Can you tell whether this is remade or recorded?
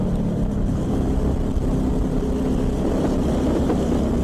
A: recorded